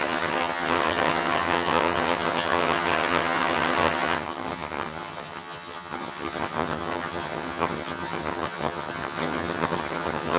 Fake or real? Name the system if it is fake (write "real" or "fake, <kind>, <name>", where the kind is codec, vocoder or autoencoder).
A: fake, vocoder, HiFi-GAN